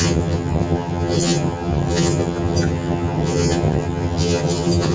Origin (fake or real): fake